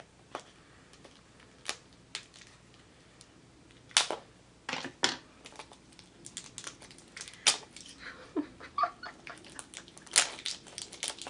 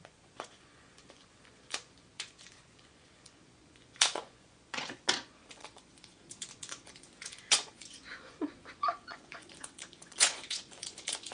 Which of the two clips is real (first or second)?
first